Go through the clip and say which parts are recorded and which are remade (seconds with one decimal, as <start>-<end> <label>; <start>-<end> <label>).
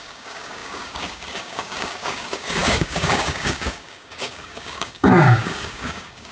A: 0.0-6.3 remade